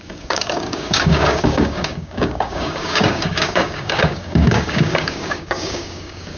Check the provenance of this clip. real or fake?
fake